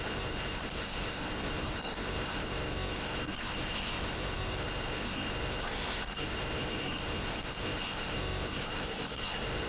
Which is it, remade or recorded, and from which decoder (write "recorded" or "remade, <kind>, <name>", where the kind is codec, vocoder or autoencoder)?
remade, codec, SNAC